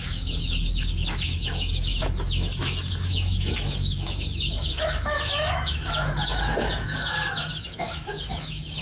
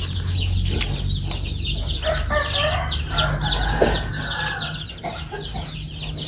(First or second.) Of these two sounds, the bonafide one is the second